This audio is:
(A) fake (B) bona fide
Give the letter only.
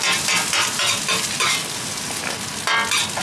B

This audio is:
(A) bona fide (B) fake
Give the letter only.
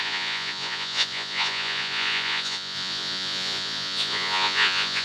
B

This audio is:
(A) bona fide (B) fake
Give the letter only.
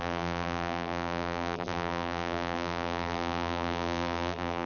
B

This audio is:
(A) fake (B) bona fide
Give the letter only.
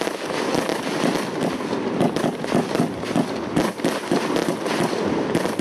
B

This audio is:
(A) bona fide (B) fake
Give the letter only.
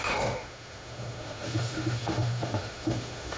B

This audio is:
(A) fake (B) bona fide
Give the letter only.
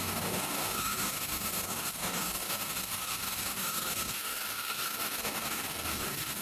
A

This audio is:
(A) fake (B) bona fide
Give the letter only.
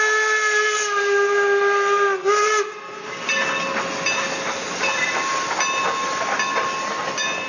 B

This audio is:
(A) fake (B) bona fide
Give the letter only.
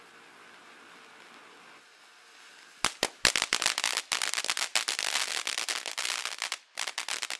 B